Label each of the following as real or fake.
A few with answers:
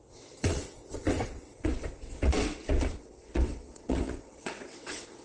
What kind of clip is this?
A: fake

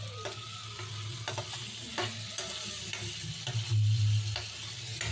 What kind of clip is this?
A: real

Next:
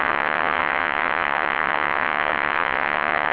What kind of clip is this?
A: fake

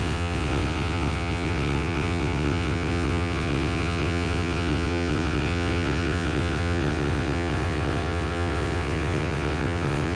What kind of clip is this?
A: fake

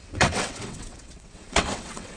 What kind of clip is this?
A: fake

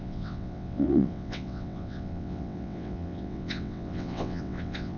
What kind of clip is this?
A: fake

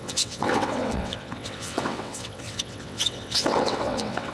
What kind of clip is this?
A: fake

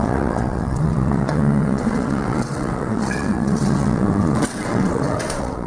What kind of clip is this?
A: fake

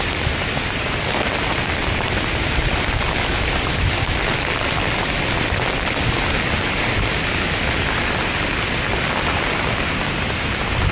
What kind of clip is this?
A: real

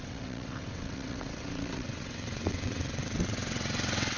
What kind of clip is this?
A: fake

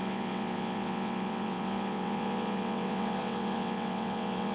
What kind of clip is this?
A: fake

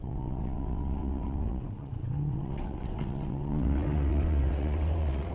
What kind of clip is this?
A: fake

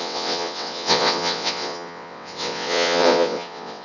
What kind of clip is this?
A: fake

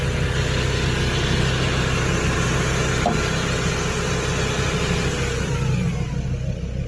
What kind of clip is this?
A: real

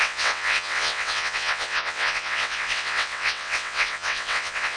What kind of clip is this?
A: fake